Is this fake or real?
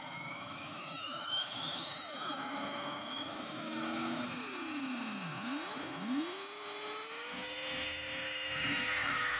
fake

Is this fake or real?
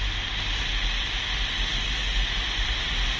real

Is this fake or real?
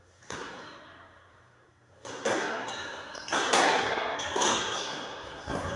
fake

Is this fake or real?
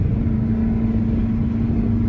real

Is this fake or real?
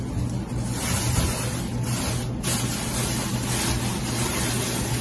real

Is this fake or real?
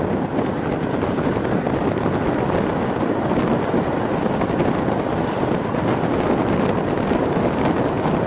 real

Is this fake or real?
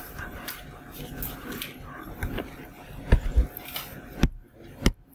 real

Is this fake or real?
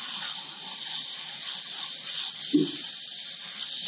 real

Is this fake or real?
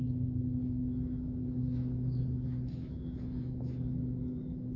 fake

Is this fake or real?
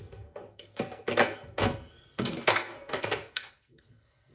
fake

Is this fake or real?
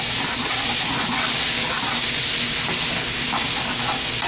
real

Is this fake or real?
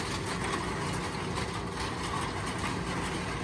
real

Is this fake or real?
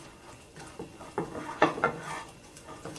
fake